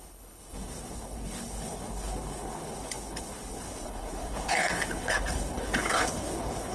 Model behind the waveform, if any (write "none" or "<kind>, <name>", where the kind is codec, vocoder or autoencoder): codec, HILCodec